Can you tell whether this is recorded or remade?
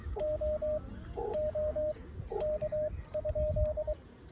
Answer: recorded